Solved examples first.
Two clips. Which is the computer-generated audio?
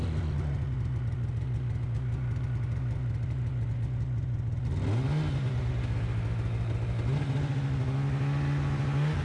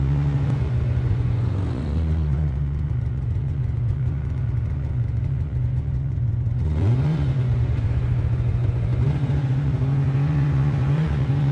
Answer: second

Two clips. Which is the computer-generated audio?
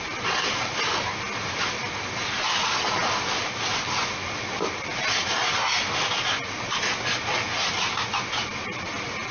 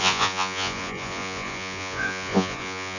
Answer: second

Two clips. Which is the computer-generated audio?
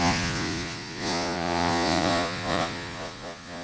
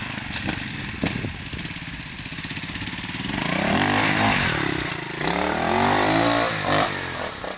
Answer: first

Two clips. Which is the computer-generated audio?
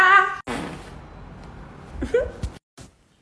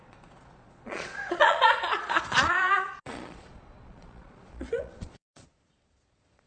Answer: second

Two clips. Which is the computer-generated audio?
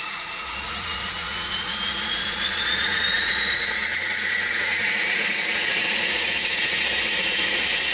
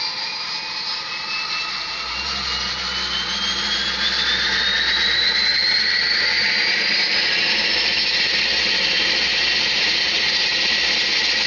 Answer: first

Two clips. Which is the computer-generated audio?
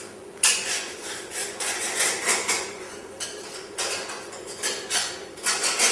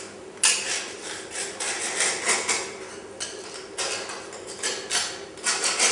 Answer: first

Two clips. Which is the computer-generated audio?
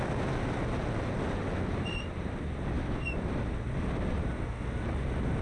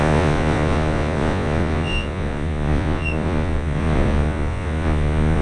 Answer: second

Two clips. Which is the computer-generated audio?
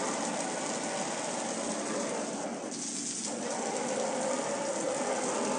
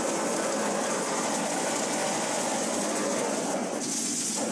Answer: second